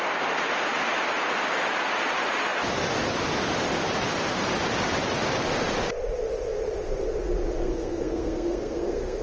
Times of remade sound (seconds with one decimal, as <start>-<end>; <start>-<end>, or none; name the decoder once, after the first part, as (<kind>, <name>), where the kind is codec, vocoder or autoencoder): 7.6-9.2 (codec, SNAC)